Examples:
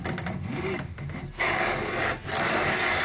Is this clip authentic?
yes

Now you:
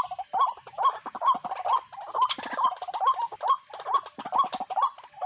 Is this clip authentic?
yes